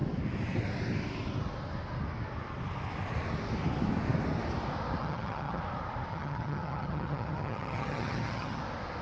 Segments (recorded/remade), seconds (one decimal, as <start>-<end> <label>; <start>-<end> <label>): 0.0-5.0 recorded; 5.0-5.6 remade; 5.6-6.1 recorded; 6.1-8.6 remade; 8.6-9.0 recorded